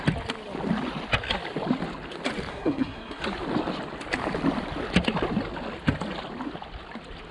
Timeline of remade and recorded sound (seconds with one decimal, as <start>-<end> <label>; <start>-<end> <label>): 0.0-2.5 recorded; 2.5-3.2 remade; 3.2-7.3 recorded